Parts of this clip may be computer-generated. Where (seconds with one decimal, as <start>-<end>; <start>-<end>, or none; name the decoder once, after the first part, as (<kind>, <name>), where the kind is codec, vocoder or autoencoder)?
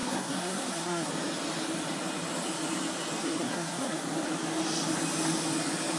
0.0-1.1 (codec, SNAC); 3.2-4.0